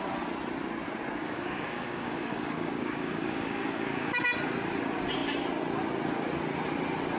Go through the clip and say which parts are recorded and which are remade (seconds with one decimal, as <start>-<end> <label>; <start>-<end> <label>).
0.0-1.2 recorded; 1.2-4.2 remade; 4.2-7.2 recorded